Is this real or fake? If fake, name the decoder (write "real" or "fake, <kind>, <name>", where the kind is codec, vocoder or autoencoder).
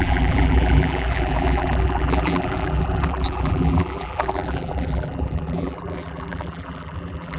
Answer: fake, vocoder, BigVGAN v2